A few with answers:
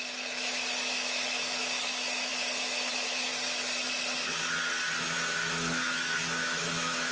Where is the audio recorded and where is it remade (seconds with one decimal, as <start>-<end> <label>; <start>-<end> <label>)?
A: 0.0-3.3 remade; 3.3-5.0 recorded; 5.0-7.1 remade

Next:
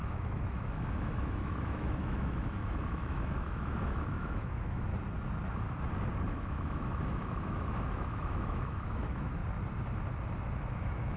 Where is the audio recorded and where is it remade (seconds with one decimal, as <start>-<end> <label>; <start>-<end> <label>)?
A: 0.0-4.9 remade; 4.9-6.3 recorded; 6.3-9.4 remade; 9.4-10.7 recorded; 10.7-11.2 remade

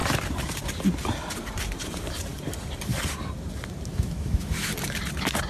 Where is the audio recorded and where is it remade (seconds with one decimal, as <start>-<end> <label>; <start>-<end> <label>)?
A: 0.0-3.9 recorded; 3.9-4.5 remade; 4.5-5.5 recorded

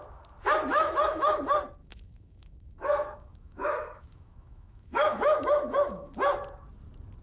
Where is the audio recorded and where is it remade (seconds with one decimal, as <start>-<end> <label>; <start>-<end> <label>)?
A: 0.0-0.7 recorded; 0.7-1.4 remade; 1.4-1.8 recorded; 1.8-6.1 remade; 6.1-7.2 recorded

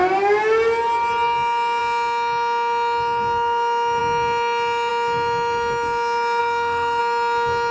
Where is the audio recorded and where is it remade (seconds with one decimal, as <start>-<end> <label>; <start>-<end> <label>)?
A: 0.0-6.4 recorded; 6.4-7.0 remade; 7.0-7.7 recorded

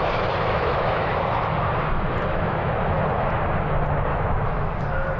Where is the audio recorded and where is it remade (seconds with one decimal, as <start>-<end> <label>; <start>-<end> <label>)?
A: 0.0-0.5 recorded; 0.5-1.1 remade; 1.1-2.3 recorded; 2.3-3.0 remade; 3.0-4.1 recorded; 4.1-4.8 remade; 4.8-5.2 recorded